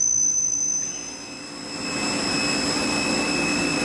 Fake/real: fake